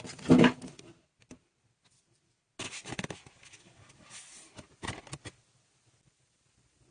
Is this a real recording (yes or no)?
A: yes